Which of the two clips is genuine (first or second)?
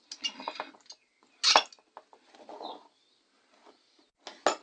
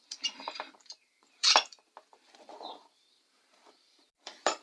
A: first